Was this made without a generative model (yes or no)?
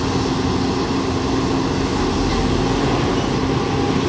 yes